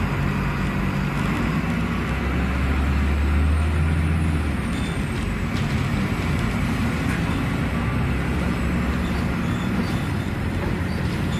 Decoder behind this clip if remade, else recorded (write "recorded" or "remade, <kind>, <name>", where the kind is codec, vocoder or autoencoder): recorded